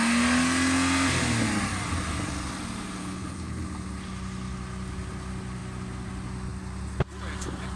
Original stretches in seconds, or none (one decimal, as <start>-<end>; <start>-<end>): 0.0-3.0; 3.6-7.8